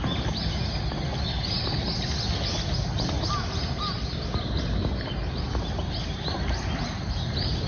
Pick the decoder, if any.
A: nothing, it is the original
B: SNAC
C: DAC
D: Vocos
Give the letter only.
A